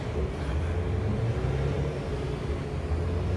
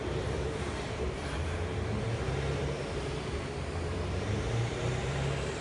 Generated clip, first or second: second